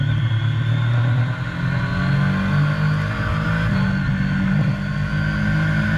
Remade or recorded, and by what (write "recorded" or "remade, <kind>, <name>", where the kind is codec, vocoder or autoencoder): recorded